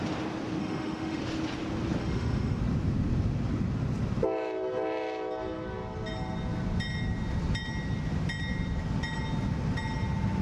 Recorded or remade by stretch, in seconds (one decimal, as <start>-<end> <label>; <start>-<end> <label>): 0.0-0.6 recorded; 0.6-1.2 remade; 1.2-2.0 recorded; 2.0-2.6 remade; 2.6-10.4 recorded